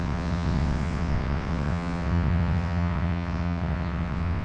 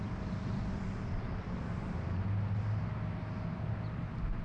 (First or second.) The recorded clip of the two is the second